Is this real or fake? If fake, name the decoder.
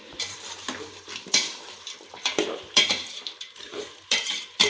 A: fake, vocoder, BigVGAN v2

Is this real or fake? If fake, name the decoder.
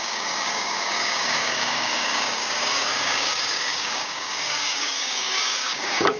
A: fake, codec, DAC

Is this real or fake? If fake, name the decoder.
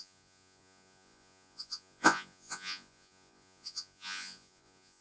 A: fake, vocoder, Vocos